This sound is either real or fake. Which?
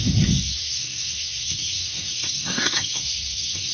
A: fake